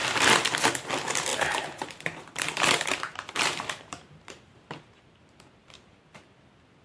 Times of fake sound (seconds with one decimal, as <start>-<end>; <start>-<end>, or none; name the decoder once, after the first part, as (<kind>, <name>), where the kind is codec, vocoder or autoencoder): 1.3-5.0 (vocoder, BigVGAN v2)